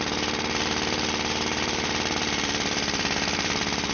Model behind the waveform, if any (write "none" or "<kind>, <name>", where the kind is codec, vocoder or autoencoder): vocoder, BigVGAN v2